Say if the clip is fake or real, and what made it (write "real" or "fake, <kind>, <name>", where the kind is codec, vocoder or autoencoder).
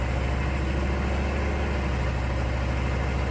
real